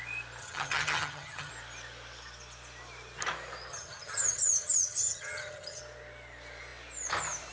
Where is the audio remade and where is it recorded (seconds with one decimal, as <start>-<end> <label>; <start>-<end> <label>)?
0.0-0.4 recorded; 0.4-1.5 remade; 1.5-3.7 recorded; 3.7-5.8 remade; 5.8-7.5 recorded